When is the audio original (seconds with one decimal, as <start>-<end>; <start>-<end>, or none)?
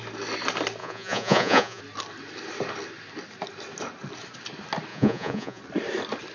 0.0-0.8; 1.8-4.9; 5.6-6.3